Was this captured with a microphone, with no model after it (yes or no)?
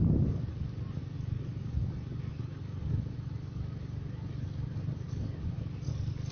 yes